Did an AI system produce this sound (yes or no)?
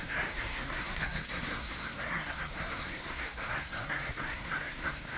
yes